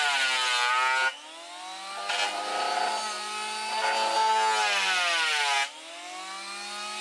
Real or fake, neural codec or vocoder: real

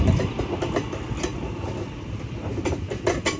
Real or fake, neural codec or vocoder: real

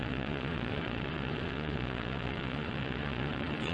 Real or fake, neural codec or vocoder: fake, vocoder, Vocos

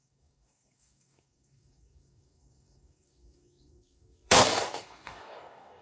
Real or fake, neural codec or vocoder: fake, codec, DAC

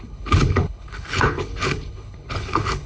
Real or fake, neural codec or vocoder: fake, codec, HILCodec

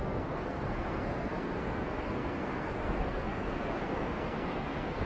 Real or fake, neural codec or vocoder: fake, codec, SNAC